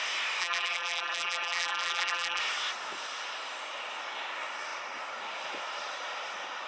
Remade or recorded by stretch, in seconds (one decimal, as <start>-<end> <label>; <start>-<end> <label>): 0.0-0.4 recorded; 0.4-2.4 remade; 2.4-6.7 recorded